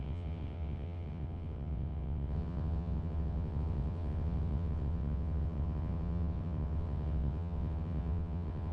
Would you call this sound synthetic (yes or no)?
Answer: yes